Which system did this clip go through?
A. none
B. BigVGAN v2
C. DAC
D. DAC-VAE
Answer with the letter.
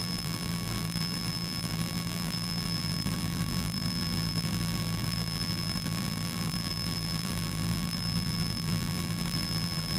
B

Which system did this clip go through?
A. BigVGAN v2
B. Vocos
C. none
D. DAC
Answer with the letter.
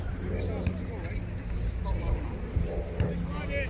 C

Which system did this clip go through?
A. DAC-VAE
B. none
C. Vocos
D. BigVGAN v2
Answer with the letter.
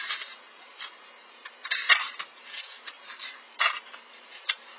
D